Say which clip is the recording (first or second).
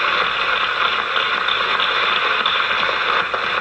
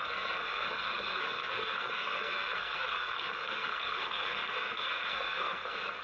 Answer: first